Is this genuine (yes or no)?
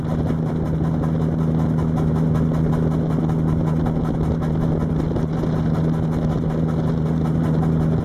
yes